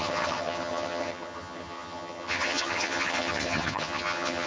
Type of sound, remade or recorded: remade